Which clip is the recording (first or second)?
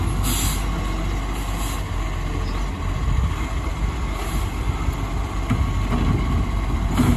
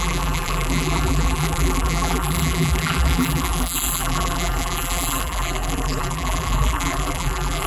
first